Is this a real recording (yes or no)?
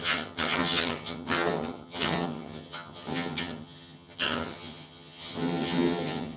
no